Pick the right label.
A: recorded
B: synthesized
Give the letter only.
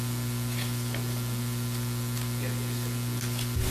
A